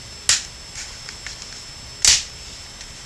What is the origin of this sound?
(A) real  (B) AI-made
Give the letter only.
A